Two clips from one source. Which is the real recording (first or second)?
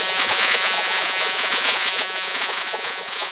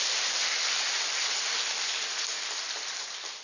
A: second